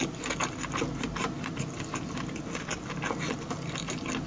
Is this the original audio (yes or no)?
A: yes